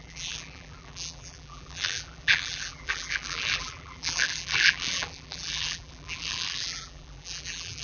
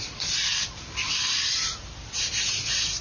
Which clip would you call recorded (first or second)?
second